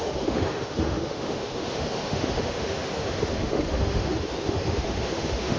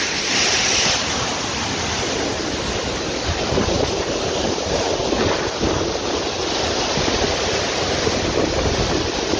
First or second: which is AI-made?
first